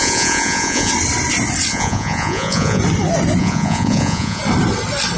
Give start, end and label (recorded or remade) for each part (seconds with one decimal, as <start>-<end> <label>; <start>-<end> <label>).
0.0-0.9 remade; 0.9-1.7 recorded; 1.7-2.8 remade; 2.8-3.4 recorded; 3.4-4.4 remade; 4.4-5.2 recorded